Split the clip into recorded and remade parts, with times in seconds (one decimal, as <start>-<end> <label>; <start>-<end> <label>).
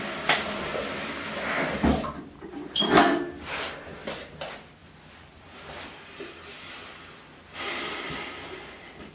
0.0-9.1 remade